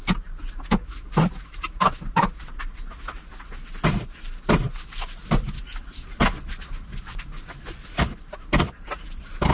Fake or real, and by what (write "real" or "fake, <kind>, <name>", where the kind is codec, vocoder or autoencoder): real